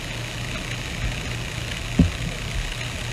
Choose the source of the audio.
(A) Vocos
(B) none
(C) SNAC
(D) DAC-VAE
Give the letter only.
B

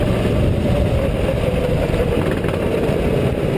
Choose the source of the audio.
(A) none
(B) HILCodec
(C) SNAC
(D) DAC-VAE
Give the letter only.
A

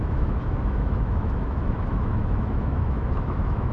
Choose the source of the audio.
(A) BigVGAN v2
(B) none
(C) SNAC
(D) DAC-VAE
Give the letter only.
D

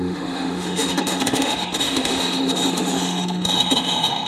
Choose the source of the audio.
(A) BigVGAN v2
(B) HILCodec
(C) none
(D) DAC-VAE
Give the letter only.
D